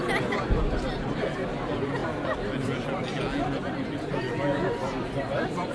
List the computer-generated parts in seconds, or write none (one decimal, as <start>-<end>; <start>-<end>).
none